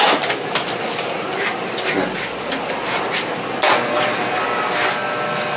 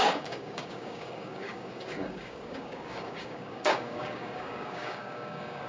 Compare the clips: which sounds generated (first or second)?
second